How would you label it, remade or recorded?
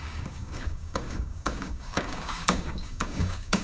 remade